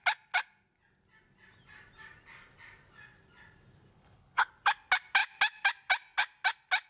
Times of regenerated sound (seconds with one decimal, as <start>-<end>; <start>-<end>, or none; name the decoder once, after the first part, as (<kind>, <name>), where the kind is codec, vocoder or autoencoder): 3.9-4.5 (codec, HILCodec)